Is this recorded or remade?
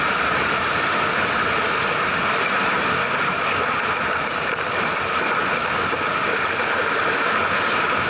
recorded